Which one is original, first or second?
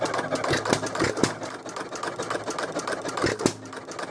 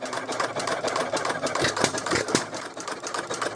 first